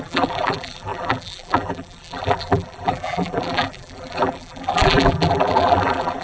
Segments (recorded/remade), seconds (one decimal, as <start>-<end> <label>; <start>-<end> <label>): 0.0-6.2 remade